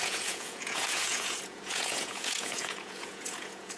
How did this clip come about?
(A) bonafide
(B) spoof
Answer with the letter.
B